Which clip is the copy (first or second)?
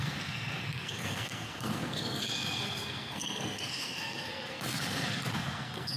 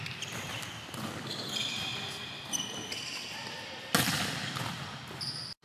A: first